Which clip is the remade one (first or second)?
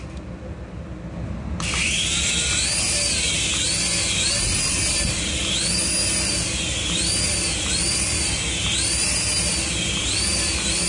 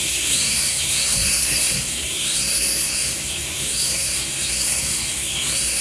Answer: second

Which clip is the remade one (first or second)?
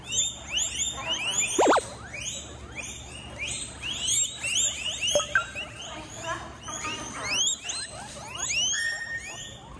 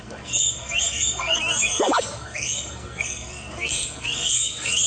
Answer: second